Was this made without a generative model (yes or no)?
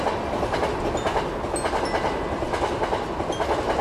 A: yes